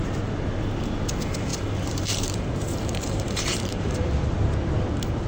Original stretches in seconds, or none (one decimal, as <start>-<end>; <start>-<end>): 0.0-1.5; 4.1-5.3